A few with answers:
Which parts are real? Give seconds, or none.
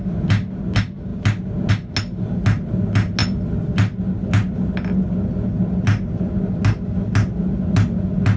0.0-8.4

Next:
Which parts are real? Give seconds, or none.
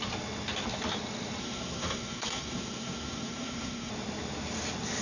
0.0-1.4; 3.9-5.0